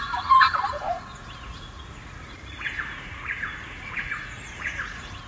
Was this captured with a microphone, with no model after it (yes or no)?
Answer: no